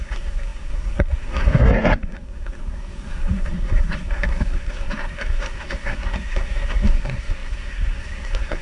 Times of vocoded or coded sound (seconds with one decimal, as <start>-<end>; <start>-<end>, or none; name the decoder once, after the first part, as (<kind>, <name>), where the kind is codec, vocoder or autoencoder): 0.0-8.6 (codec, SNAC)